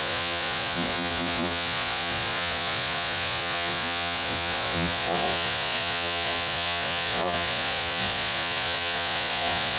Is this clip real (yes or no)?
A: no